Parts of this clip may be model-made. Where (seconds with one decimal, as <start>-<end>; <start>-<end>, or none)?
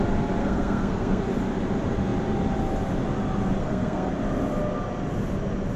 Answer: 0.4-1.2; 3.6-4.1